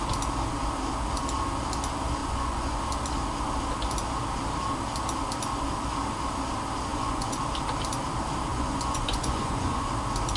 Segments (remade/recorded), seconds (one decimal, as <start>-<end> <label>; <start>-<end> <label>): 0.0-2.2 recorded; 2.2-2.8 remade; 2.8-6.9 recorded; 6.9-7.4 remade; 7.4-8.5 recorded; 8.5-9.9 remade; 9.9-10.4 recorded